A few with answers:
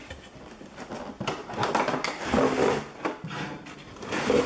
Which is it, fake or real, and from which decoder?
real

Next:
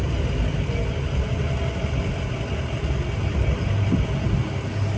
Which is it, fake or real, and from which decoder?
real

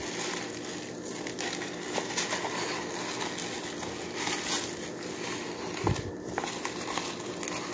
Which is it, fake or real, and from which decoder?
real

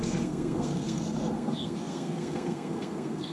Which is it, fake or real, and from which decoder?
fake, codec, SNAC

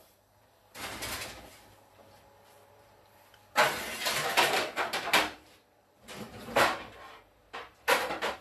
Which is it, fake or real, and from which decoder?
fake, vocoder, BigVGAN v2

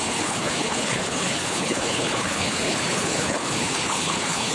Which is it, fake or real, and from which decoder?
fake, codec, HILCodec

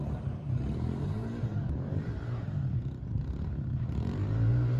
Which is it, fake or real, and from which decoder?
fake, vocoder, BigVGAN v2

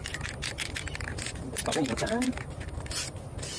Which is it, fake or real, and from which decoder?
real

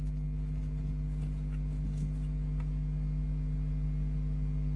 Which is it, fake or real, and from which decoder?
real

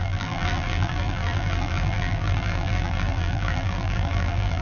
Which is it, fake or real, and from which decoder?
fake, vocoder, BigVGAN v2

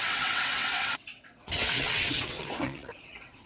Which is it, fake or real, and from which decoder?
fake, vocoder, WaveNeXt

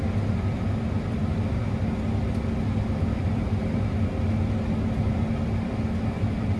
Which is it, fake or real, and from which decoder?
real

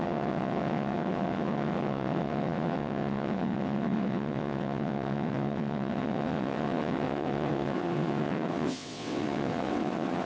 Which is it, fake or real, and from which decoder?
fake, vocoder, WaveNeXt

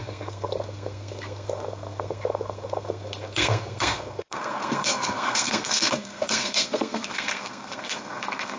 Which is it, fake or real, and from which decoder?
fake, codec, SNAC